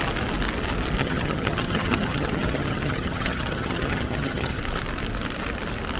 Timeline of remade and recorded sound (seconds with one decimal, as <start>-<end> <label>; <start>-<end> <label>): 0.0-1.0 recorded; 1.0-4.6 remade; 4.6-6.0 recorded